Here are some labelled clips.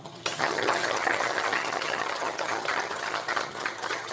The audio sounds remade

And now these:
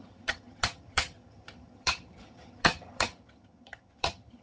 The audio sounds remade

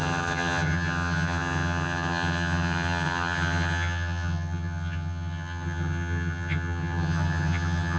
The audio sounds remade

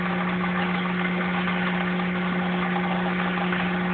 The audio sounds recorded